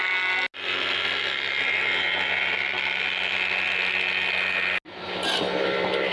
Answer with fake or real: real